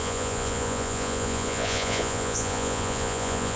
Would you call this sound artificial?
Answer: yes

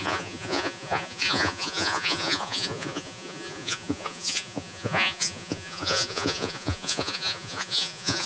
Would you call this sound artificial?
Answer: yes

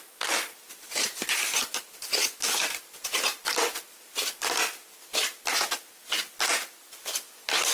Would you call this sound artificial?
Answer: no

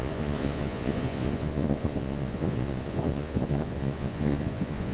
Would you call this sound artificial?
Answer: yes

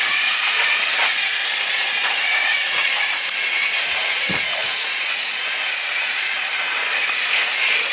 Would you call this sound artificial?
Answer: yes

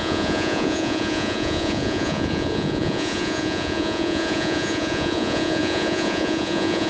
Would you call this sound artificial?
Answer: yes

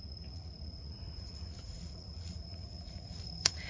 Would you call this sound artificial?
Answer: yes